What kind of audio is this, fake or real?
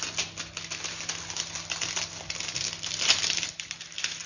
real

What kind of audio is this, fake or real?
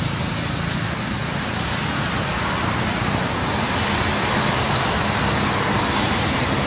real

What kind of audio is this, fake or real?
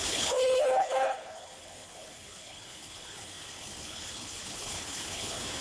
fake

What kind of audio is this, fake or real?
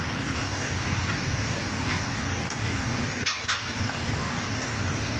fake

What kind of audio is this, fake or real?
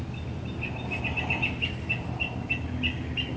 real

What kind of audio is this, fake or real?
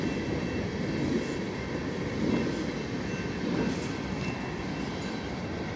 real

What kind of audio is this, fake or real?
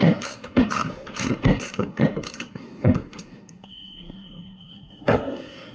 fake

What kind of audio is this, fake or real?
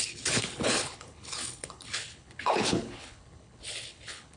fake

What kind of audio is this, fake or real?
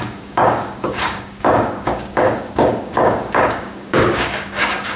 fake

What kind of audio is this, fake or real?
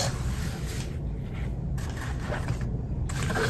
real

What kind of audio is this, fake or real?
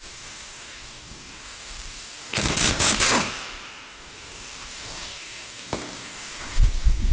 fake